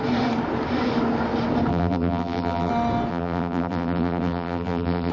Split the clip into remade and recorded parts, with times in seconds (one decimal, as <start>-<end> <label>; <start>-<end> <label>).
0.0-1.7 recorded; 1.7-2.7 remade; 2.7-3.1 recorded; 3.1-5.1 remade